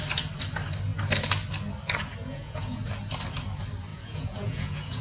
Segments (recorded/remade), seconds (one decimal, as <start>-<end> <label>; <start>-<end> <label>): 0.0-2.2 recorded; 2.2-2.8 remade; 2.8-3.9 recorded; 3.9-5.0 remade